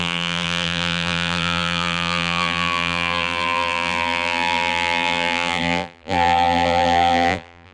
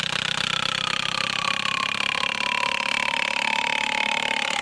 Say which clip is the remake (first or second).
first